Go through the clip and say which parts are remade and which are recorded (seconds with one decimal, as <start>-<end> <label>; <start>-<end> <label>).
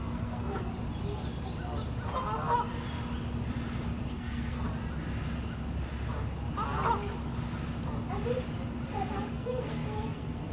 0.0-0.7 remade; 0.7-4.1 recorded; 4.1-4.7 remade; 4.7-9.1 recorded; 9.1-10.5 remade